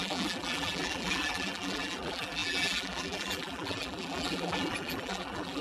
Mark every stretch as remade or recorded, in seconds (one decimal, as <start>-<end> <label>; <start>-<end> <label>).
0.0-5.6 remade